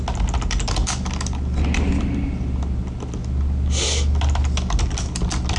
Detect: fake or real real